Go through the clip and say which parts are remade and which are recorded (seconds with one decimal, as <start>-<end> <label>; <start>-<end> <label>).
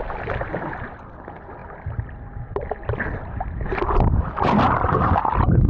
0.0-5.7 recorded